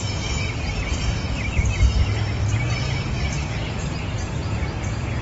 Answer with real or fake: fake